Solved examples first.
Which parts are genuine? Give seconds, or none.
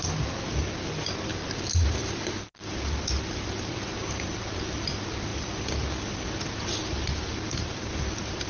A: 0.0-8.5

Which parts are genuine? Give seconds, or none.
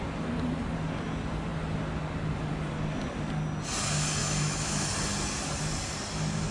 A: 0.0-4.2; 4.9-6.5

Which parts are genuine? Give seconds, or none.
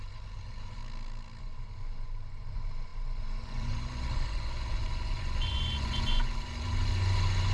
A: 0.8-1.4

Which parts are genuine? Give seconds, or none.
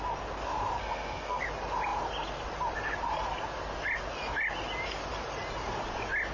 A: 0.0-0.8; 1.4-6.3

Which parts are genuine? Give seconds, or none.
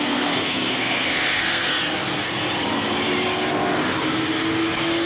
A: 1.7-5.1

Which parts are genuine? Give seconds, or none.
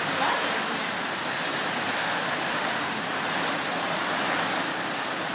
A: 0.0-2.0; 3.0-5.3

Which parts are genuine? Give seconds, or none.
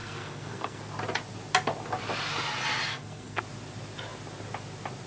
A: 0.8-2.9; 3.4-5.1